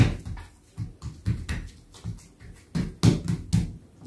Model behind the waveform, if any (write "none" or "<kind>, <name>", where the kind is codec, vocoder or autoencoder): none